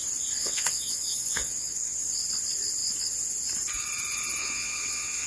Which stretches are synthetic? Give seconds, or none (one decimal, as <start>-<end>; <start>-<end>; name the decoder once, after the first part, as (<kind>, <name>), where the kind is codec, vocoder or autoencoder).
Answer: 0.4-2.1 (vocoder, WaveNeXt); 4.4-5.3